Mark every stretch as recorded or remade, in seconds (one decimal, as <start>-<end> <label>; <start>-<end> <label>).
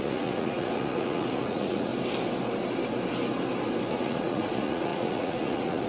0.0-1.9 remade; 1.9-3.9 recorded; 3.9-5.9 remade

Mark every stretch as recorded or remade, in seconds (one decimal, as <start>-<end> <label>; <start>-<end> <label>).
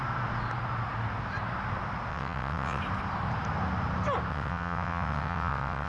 0.0-2.1 recorded; 2.1-2.8 remade; 2.8-4.3 recorded; 4.3-5.9 remade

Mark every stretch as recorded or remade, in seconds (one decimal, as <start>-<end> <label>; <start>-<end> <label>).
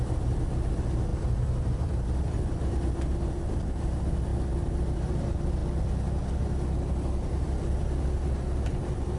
0.0-5.6 remade; 5.6-8.6 recorded; 8.6-9.2 remade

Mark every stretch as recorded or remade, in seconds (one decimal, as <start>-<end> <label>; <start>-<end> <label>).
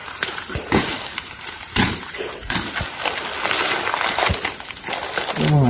0.0-2.3 remade; 2.3-5.7 recorded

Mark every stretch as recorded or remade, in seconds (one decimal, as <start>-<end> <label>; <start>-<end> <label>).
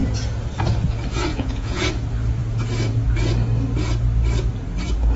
0.0-1.3 recorded; 1.3-1.8 remade; 1.8-5.2 recorded